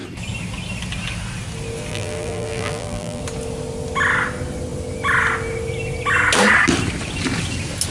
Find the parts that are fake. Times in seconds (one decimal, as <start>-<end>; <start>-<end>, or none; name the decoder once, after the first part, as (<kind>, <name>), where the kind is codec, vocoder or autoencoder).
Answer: 1.9-3.2 (vocoder, BigVGAN v2)